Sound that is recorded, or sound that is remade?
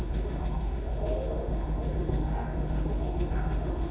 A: remade